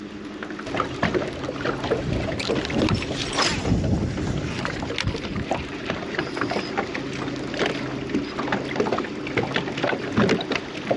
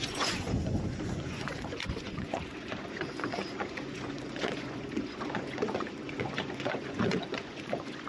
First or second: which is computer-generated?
second